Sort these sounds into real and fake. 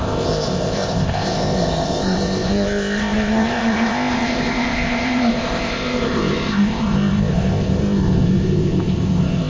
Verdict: fake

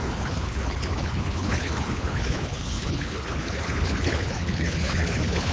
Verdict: fake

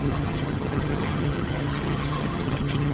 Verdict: fake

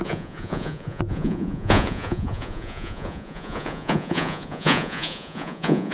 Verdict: fake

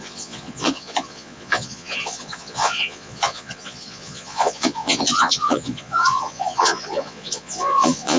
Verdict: fake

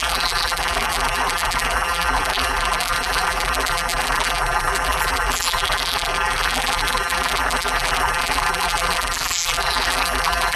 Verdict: fake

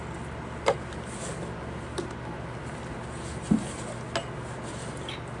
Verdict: real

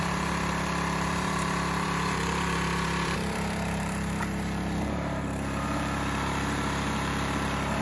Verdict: fake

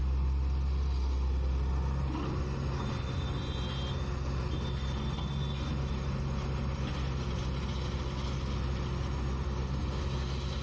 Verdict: real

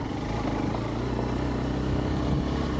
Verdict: real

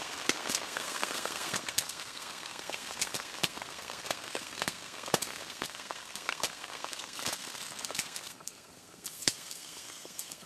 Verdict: fake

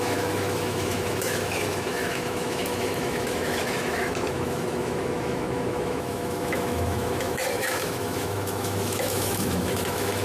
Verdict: fake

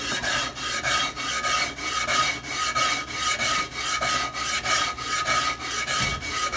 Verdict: real